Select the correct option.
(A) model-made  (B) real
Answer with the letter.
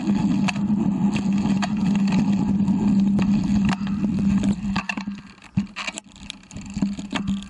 B